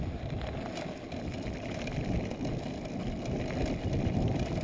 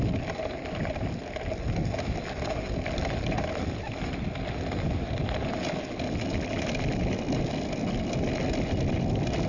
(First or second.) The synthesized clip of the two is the first